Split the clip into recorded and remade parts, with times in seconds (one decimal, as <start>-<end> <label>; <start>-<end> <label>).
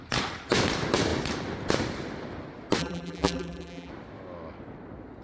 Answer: 0.0-2.8 recorded; 2.8-3.9 remade; 3.9-5.2 recorded